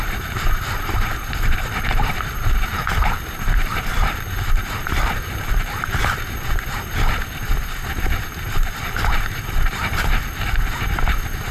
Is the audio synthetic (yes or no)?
yes